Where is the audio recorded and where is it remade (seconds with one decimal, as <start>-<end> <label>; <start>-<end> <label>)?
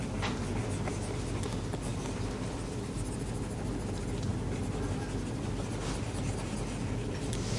0.0-7.6 recorded